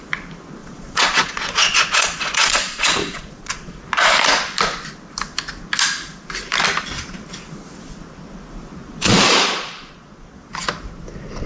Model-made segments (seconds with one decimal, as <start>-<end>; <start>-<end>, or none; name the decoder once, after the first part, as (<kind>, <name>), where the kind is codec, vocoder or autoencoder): 0.6-3.8 (vocoder, Vocos); 8.8-10.5